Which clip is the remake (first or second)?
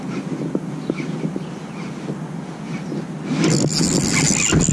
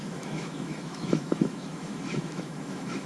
second